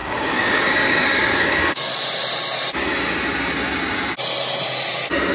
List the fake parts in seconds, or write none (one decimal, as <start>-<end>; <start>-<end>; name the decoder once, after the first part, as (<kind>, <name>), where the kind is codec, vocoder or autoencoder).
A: 0.0-1.9 (codec, DAC)